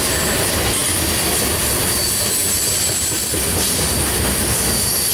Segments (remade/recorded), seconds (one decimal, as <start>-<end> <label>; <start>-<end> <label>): 0.0-5.1 recorded